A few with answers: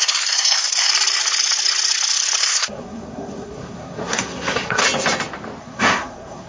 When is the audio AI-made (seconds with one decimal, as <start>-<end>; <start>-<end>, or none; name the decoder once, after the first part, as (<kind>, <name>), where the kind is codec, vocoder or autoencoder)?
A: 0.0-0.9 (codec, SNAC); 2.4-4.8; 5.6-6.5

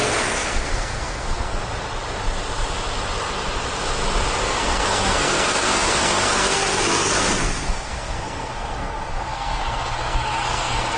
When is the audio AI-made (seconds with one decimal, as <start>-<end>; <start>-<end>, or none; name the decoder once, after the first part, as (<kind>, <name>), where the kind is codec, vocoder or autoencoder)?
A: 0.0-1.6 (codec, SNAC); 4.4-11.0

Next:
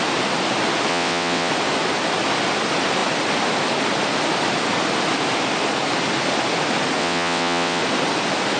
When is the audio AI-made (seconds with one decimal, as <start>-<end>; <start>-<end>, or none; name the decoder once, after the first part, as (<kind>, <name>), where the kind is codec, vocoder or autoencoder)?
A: 0.9-1.5 (vocoder, WaveNeXt); 7.0-7.8

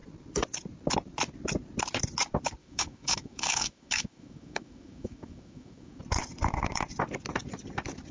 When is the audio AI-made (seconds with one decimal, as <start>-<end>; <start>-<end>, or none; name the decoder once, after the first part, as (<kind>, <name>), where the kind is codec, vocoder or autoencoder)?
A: 2.6-6.0 (autoencoder, DAC-VAE)

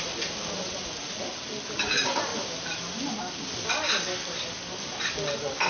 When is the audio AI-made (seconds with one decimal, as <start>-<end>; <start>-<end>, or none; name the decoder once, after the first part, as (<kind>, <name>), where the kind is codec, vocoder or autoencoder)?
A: none

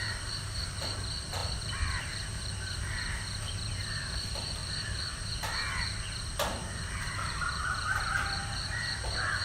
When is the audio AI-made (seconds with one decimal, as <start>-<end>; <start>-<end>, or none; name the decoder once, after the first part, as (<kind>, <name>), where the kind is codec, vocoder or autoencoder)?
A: 0.0-9.4 (vocoder, BigVGAN v2)

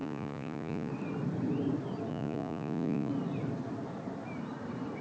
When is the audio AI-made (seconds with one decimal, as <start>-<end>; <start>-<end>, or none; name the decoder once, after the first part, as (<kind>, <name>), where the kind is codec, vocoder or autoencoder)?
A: 0.0-0.9 (vocoder, Vocos); 2.1-3.1